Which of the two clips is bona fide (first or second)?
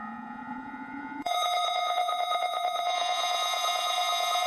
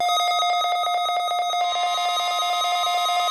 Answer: second